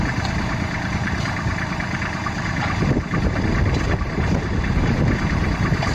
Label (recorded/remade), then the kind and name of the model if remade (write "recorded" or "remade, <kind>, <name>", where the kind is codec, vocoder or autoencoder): remade, vocoder, BigVGAN v2